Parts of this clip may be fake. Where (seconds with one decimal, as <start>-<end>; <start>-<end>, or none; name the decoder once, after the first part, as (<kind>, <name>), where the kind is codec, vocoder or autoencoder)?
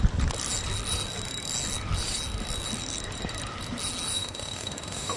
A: 4.1-5.2 (autoencoder, DAC-VAE)